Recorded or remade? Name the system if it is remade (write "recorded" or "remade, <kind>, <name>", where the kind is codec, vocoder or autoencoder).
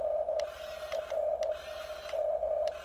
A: recorded